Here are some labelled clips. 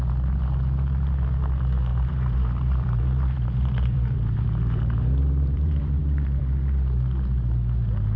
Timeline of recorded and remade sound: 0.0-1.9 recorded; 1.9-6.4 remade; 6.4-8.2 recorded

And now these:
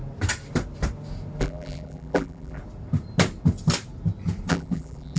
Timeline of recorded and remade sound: 0.0-1.4 recorded; 1.4-2.6 remade; 2.6-4.5 recorded; 4.5-5.2 remade

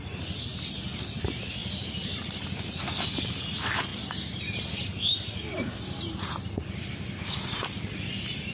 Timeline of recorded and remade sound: 0.0-8.5 recorded

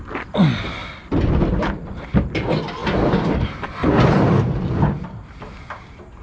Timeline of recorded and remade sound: 0.0-0.8 recorded; 0.8-2.2 remade; 2.2-2.8 recorded; 2.8-3.4 remade; 3.4-3.8 recorded; 3.8-4.9 remade; 4.9-6.2 recorded

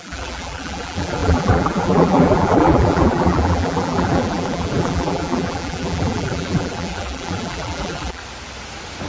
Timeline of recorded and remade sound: 0.0-8.2 remade; 8.2-9.1 recorded

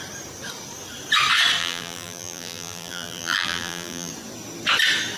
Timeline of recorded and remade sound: 0.0-1.6 recorded; 1.6-4.1 remade; 4.1-5.2 recorded

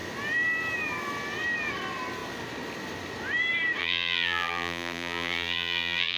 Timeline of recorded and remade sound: 0.0-3.8 recorded; 3.8-6.2 remade

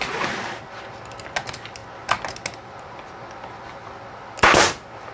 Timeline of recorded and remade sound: 0.0-5.1 recorded